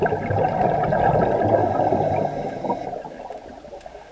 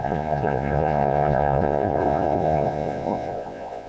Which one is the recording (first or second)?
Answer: first